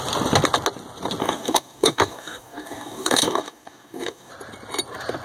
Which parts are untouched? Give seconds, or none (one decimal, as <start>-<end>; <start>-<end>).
0.0-1.2; 4.3-5.2